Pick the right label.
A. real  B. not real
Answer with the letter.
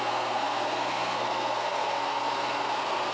B